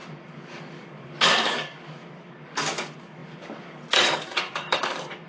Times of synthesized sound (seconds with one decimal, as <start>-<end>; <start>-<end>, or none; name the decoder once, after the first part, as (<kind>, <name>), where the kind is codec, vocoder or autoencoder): 0.0-5.3 (codec, DAC)